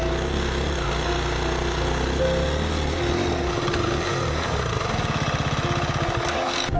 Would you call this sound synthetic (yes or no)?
no